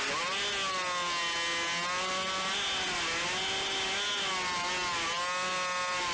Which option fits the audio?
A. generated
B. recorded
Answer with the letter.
B